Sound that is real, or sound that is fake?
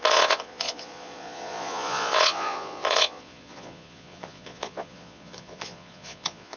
fake